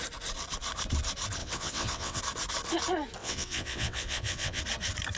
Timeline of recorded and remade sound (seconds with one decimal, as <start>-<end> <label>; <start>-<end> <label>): 0.0-1.4 recorded; 1.4-2.2 remade; 2.2-3.2 recorded; 3.2-4.6 remade; 4.6-5.2 recorded